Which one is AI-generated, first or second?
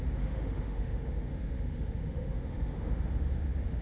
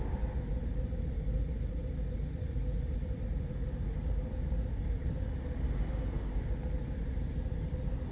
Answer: first